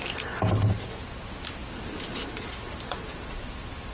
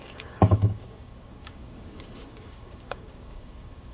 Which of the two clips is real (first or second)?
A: first